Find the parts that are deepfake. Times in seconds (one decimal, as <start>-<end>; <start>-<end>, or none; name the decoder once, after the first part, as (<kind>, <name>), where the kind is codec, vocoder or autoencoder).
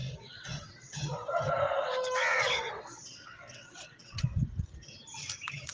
0.0-1.5 (vocoder, WaveNeXt); 2.3-4.4